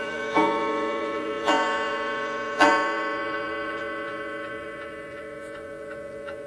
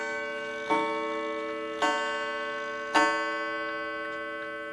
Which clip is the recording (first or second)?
second